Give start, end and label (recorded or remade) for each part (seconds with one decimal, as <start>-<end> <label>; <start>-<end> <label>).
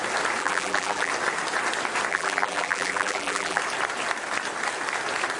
0.0-0.4 recorded; 0.4-1.1 remade; 1.1-2.1 recorded; 2.1-3.6 remade; 3.6-5.4 recorded